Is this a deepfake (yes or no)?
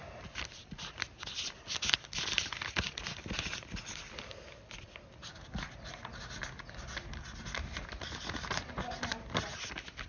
no